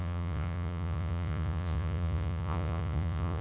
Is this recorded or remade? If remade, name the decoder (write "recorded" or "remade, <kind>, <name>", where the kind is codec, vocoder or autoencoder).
remade, vocoder, Vocos